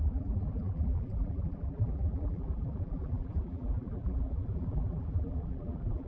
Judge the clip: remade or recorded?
remade